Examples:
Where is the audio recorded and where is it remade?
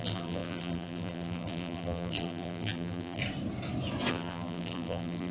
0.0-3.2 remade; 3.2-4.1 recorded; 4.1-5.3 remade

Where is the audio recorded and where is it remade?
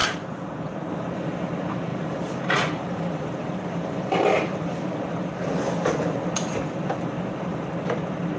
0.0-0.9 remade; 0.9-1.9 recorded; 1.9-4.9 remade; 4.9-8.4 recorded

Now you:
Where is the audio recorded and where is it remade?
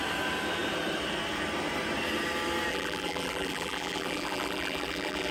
0.0-2.7 recorded; 2.7-5.3 remade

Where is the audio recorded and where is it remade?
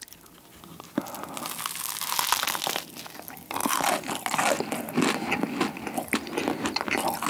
0.0-7.3 recorded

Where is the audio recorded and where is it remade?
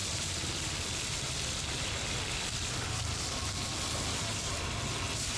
0.0-3.2 remade; 3.2-5.4 recorded